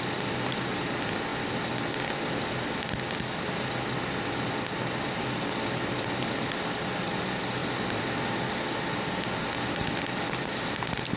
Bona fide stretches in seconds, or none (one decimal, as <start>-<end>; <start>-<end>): 0.0-11.2